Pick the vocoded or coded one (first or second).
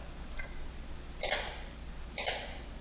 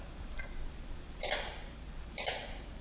second